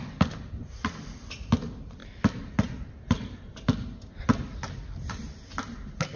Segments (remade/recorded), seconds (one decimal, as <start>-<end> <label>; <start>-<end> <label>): 0.0-6.2 recorded